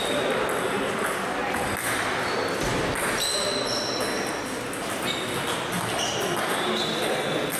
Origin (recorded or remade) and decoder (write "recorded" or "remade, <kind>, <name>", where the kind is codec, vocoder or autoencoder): recorded